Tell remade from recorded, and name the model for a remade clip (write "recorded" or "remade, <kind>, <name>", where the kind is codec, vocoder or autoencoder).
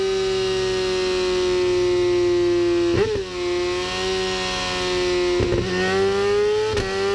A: recorded